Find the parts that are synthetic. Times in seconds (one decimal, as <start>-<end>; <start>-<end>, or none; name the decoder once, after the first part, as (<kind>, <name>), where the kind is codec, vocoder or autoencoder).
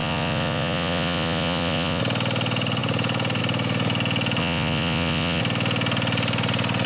0.0-2.0 (vocoder, Vocos); 4.4-5.4